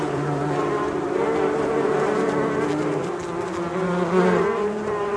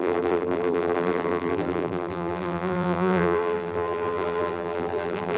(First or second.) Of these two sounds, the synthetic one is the second